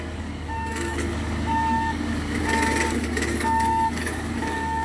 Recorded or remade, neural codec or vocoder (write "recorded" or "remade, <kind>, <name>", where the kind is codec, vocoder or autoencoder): remade, codec, DAC